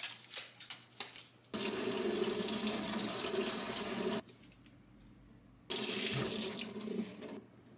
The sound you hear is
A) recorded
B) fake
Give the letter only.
A